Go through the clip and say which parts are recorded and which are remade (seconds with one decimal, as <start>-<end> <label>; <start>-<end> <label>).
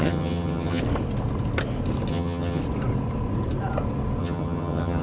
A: 0.0-0.8 remade; 0.8-2.1 recorded; 2.1-2.6 remade; 2.6-4.2 recorded; 4.2-5.0 remade